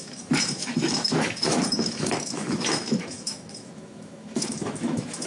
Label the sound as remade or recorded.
remade